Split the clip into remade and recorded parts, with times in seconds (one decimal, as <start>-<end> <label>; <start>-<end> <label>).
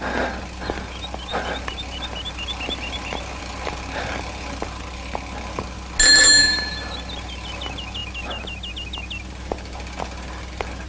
0.0-10.9 recorded